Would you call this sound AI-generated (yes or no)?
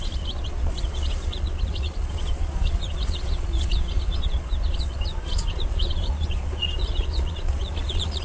yes